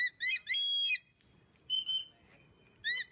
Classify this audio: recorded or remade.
recorded